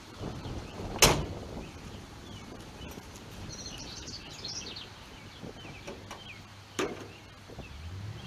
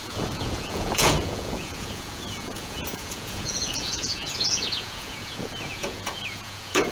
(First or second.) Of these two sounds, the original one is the first